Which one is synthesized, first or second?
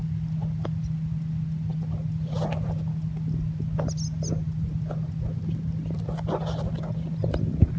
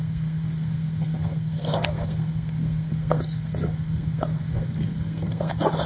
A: second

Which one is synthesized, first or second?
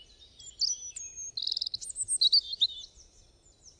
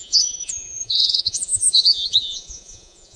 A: second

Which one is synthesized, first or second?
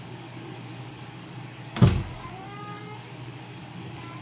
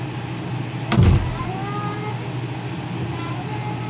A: first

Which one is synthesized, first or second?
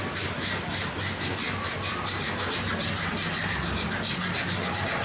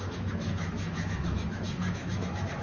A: second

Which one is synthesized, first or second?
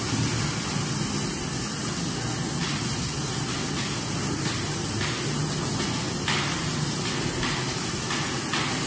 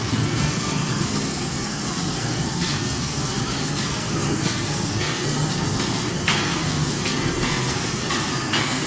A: second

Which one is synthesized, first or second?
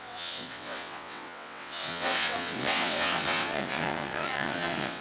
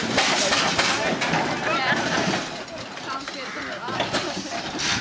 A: first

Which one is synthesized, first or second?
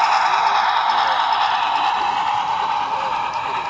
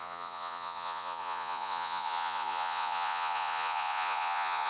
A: second